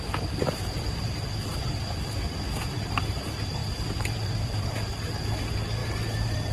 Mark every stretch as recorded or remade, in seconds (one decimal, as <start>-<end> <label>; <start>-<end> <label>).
0.0-3.6 recorded; 3.6-4.7 remade; 4.7-6.5 recorded